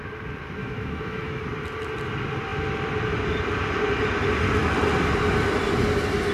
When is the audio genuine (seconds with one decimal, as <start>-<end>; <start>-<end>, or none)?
0.0-0.6; 1.4-6.3